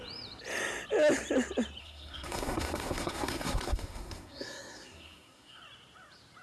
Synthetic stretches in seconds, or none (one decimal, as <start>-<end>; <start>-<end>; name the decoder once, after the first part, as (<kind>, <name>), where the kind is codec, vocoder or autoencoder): 1.8-5.6 (codec, SNAC)